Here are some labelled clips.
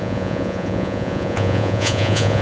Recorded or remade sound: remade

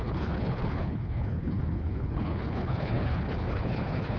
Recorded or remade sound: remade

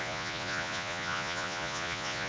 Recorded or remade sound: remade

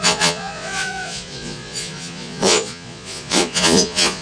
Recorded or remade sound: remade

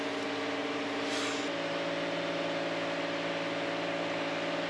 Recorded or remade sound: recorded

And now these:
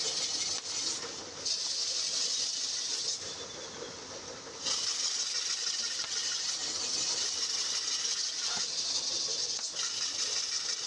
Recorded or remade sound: recorded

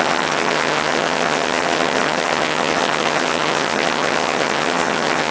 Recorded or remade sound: remade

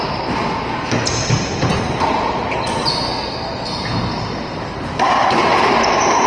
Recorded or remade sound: recorded